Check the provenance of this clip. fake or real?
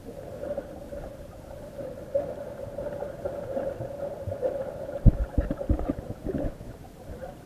real